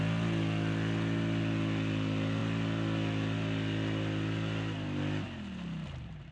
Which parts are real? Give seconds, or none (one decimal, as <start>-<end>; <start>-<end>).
0.0-6.3